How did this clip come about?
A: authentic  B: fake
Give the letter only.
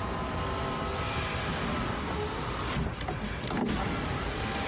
A